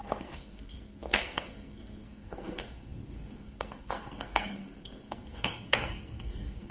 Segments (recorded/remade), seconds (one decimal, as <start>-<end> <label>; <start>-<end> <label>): 0.0-6.7 remade